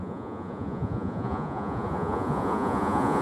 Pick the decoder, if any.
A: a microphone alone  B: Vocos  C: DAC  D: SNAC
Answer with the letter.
B